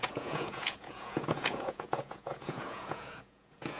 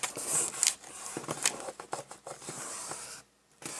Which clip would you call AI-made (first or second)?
first